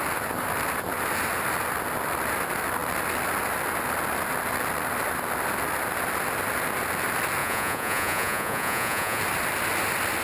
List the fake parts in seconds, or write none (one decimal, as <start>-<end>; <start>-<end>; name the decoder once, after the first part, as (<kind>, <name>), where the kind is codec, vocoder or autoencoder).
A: 7.4-9.2 (vocoder, Vocos)

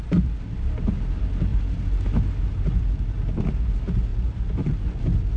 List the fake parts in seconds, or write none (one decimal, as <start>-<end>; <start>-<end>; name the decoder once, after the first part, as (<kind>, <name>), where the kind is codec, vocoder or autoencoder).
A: none

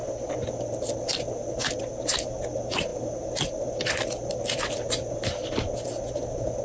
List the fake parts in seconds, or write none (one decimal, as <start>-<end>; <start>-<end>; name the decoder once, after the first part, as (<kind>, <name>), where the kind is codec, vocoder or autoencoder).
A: none

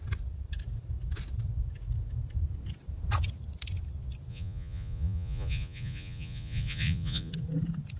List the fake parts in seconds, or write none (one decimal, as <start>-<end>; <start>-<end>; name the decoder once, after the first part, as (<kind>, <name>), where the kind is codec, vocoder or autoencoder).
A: 4.3-7.3 (vocoder, Vocos)

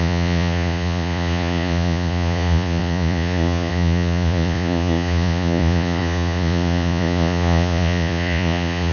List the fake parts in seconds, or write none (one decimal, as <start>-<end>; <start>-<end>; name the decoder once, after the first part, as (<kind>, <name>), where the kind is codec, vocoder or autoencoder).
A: 0.0-8.9 (vocoder, Vocos)